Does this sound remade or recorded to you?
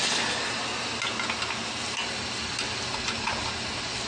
recorded